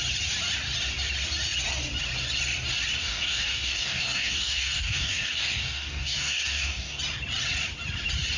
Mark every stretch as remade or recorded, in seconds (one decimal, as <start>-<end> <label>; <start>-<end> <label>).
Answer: 0.0-3.0 recorded; 3.0-7.0 remade; 7.0-8.4 recorded

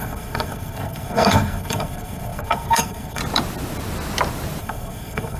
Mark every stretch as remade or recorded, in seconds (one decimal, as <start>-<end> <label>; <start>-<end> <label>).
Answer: 0.0-3.2 remade; 3.2-4.6 recorded; 4.6-5.4 remade

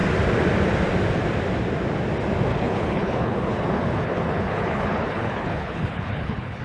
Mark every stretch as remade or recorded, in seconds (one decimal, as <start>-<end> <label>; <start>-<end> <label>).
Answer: 0.0-2.5 recorded; 2.5-6.6 remade